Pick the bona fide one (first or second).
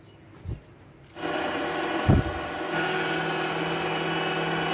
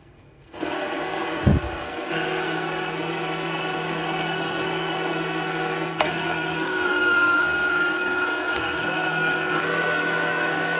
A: first